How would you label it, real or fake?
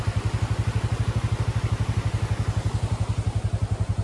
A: real